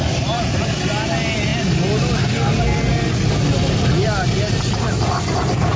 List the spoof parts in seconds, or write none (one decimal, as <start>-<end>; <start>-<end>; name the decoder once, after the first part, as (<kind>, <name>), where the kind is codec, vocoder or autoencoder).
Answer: none